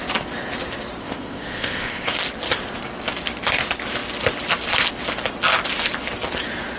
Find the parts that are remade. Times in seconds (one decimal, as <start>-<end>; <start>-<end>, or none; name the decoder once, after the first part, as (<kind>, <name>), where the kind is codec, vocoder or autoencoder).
1.0-2.1 (codec, ZipCodec)